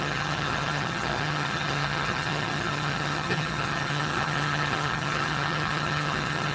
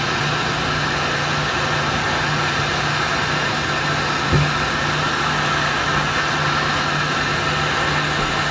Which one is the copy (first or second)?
first